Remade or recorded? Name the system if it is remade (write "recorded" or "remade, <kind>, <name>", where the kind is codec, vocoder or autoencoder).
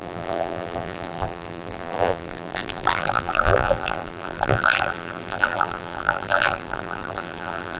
remade, vocoder, BigVGAN v2